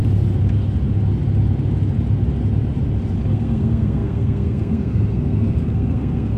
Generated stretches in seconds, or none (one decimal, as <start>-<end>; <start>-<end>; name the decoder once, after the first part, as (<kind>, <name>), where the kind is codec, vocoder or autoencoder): 3.3-6.4 (codec, SNAC)